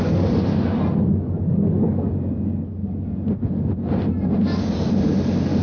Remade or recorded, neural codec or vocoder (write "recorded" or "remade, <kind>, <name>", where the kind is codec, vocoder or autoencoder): recorded